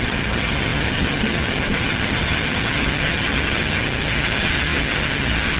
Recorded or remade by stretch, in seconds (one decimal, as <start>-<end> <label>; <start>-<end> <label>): 0.0-5.6 remade